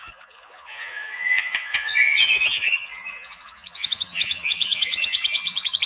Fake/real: fake